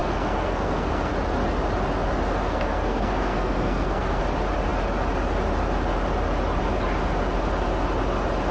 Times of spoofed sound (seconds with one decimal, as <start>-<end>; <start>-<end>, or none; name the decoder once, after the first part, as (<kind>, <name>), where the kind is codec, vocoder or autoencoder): 0.0-1.1 (codec, SNAC); 2.4-4.2